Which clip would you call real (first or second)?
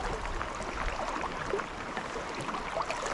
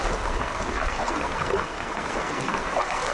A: first